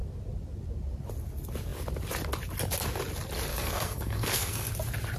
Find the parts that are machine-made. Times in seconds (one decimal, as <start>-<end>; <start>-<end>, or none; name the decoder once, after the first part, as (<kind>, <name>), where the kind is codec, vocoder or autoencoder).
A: 3.5-4.7 (codec, SNAC)